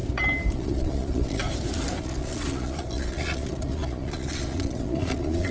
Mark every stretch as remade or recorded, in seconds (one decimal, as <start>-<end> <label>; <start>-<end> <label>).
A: 0.0-0.5 recorded; 0.5-1.4 remade; 1.4-2.0 recorded; 2.0-5.5 remade